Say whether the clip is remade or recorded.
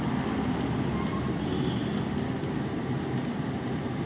recorded